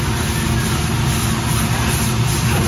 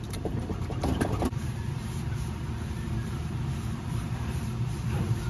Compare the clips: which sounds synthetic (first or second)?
second